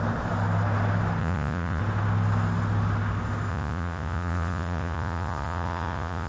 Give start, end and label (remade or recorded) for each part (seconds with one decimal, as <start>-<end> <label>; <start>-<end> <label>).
0.0-1.2 recorded; 1.2-1.8 remade; 1.8-3.5 recorded; 3.5-6.3 remade